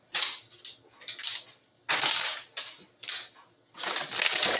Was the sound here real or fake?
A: real